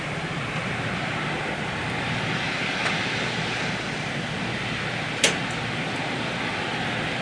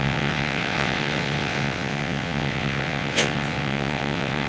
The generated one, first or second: second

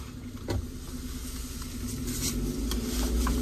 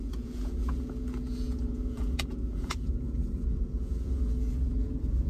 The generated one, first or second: second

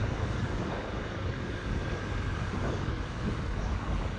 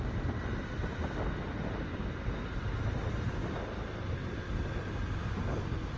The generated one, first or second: first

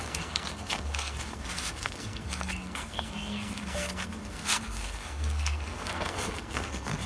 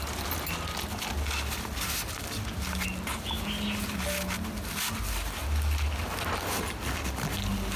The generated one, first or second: first